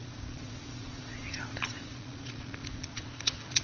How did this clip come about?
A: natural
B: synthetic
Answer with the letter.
B